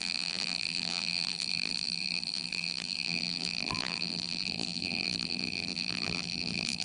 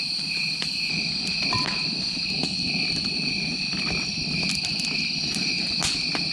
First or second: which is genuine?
second